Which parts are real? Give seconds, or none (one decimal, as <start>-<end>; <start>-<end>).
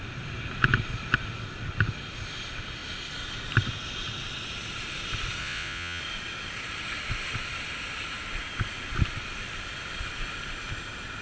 0.0-5.4; 6.0-11.2